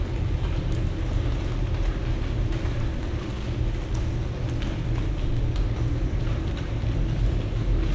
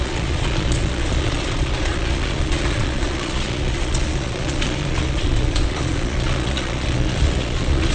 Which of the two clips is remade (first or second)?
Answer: second